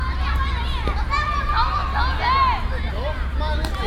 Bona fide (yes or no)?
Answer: yes